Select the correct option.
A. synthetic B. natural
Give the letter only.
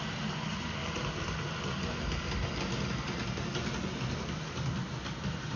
B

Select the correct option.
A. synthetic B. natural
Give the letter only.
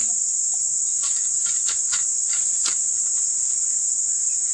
A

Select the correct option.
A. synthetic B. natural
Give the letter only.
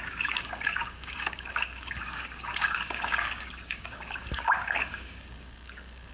A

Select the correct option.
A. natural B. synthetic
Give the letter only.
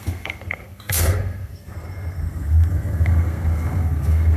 B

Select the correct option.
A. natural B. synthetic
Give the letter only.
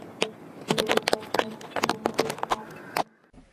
A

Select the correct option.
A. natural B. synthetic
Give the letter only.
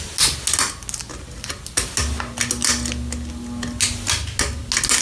A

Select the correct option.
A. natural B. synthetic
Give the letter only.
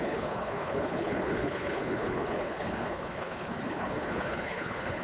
B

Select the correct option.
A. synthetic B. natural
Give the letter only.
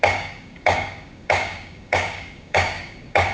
A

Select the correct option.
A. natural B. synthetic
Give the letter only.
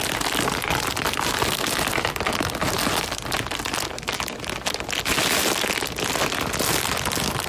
A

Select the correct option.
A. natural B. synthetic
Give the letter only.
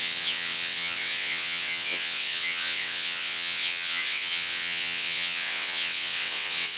B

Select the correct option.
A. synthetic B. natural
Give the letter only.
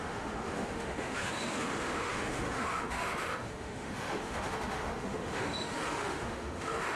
A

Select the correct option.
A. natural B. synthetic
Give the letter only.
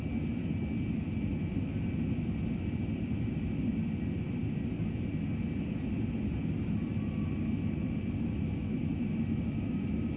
A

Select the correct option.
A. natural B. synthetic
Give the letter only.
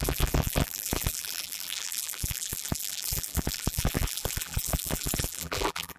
B